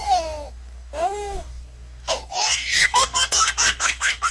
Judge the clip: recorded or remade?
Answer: remade